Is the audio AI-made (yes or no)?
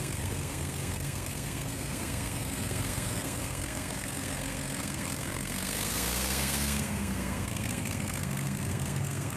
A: yes